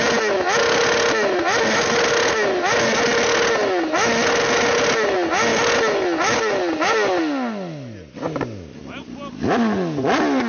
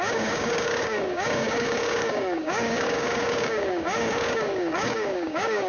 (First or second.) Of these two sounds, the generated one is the second